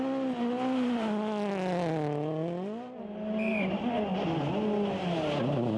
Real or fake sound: real